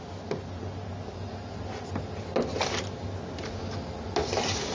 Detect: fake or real real